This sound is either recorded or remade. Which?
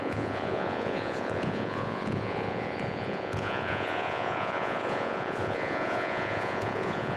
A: remade